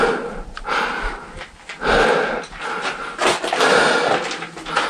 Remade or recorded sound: recorded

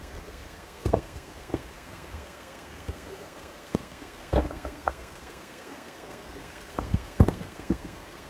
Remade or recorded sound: remade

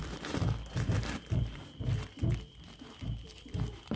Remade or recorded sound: remade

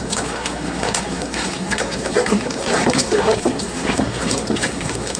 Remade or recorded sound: remade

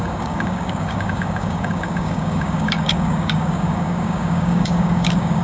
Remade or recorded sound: remade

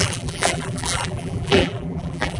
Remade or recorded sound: remade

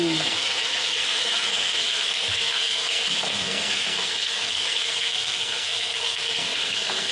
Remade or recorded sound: remade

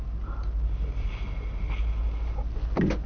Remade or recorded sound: recorded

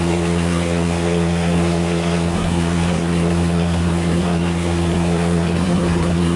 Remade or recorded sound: remade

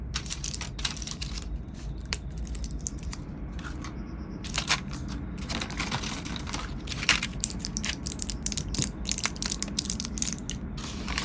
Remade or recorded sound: remade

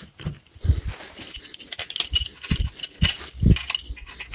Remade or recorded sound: recorded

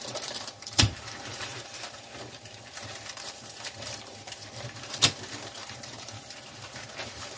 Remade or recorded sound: remade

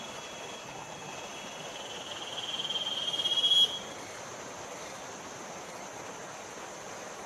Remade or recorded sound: recorded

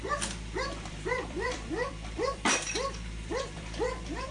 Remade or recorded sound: remade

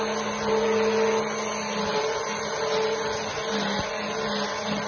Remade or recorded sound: recorded